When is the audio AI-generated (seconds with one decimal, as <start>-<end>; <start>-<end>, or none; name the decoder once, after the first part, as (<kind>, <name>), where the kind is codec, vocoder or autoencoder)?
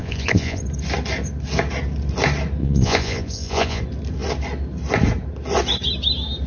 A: 0.0-0.6 (vocoder, Vocos); 2.6-3.8